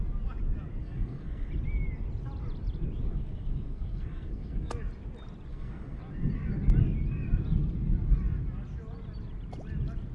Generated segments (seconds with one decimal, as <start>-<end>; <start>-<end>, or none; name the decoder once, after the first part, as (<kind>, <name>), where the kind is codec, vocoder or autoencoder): 0.8-1.5 (codec, SNAC); 3.1-4.7; 5.5-6.0